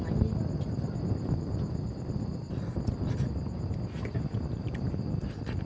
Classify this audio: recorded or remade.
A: recorded